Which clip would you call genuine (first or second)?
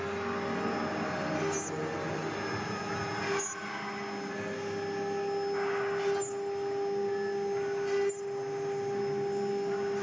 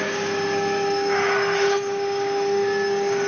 first